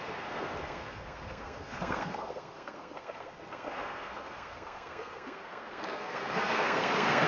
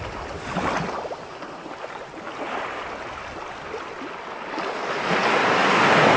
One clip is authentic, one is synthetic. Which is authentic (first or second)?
second